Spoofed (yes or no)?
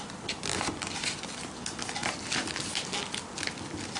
no